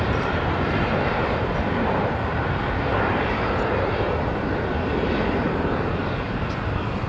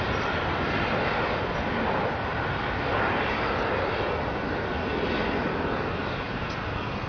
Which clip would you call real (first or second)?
second